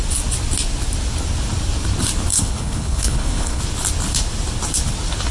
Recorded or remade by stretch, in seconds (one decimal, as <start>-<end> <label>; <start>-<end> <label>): 0.0-2.3 recorded; 2.3-3.6 remade; 3.6-5.3 recorded